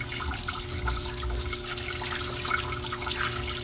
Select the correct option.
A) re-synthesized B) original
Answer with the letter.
B